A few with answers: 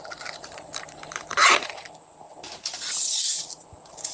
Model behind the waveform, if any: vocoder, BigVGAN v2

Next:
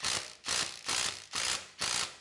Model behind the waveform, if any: none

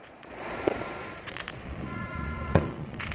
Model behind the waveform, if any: vocoder, Vocos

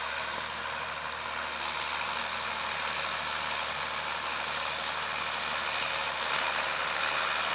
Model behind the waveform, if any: none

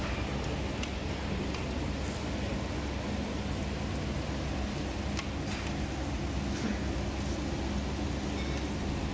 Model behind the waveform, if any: none